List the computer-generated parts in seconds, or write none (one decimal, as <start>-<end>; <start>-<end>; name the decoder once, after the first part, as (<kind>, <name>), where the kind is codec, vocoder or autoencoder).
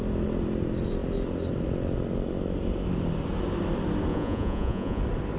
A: 4.1-5.0 (vocoder, Vocos)